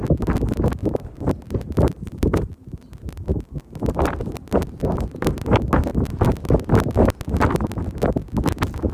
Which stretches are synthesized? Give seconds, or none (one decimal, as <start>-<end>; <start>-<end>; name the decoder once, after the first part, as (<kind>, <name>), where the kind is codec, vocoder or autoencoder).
0.8-2.7 (vocoder, BigVGAN v2)